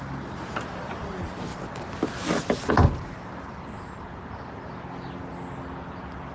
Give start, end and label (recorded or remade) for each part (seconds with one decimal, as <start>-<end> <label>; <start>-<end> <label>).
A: 0.0-6.3 recorded